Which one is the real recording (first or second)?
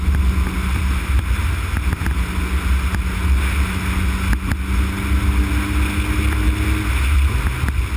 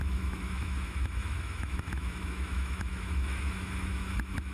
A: first